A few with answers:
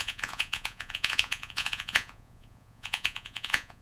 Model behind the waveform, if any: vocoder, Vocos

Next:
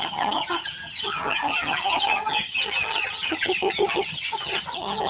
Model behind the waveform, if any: vocoder, HiFi-GAN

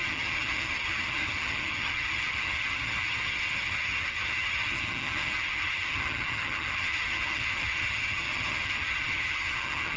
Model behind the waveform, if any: vocoder, HiFi-GAN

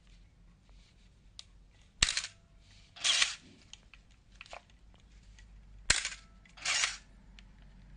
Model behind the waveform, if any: none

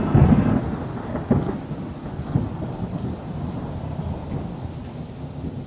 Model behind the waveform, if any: none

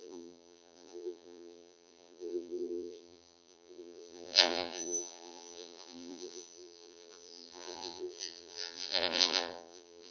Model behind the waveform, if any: vocoder, BigVGAN v2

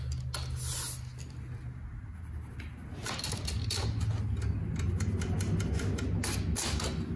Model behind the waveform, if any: none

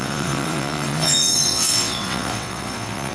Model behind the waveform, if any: vocoder, WaveNeXt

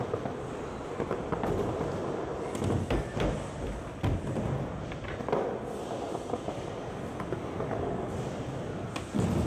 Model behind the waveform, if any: none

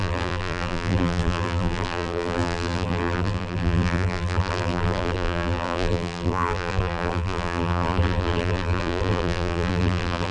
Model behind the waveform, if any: vocoder, BigVGAN v2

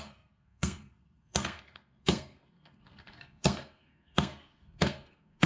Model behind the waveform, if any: codec, SNAC